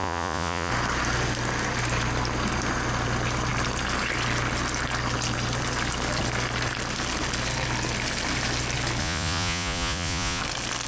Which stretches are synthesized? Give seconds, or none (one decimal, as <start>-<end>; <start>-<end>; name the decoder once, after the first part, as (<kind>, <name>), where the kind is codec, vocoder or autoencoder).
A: 0.0-0.7 (vocoder, Vocos); 9.0-10.4